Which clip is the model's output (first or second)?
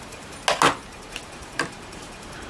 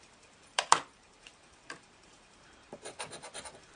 second